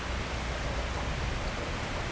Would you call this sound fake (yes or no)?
no